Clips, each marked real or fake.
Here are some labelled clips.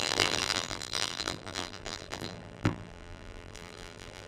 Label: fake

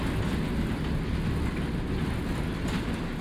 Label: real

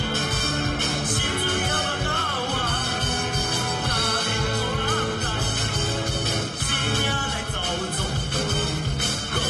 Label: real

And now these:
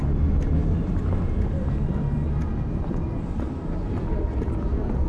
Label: real